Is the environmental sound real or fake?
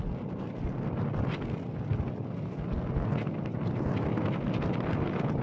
real